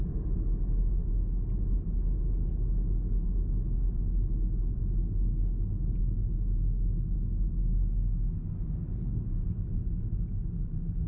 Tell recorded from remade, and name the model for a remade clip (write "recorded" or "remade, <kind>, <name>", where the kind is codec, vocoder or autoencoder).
recorded